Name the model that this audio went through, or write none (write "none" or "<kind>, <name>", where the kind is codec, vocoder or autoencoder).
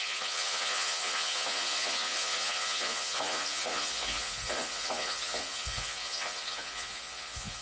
vocoder, Vocos